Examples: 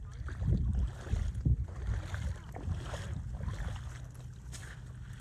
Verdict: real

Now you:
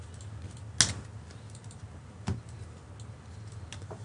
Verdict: real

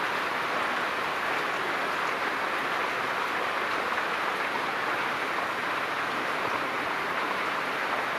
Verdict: real